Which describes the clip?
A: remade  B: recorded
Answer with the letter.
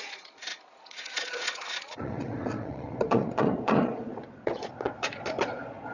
A